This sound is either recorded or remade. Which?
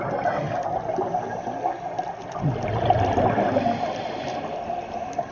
recorded